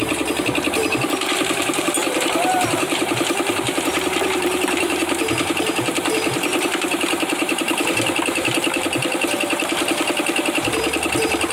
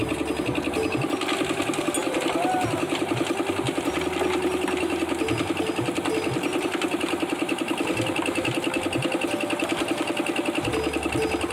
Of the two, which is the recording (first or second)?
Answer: second